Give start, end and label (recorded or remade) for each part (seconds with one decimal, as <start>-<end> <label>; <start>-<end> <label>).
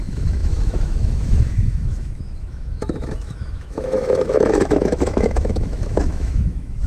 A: 0.0-6.9 remade